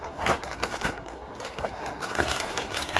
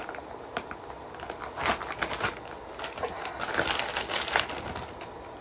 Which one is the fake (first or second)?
first